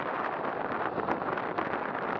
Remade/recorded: recorded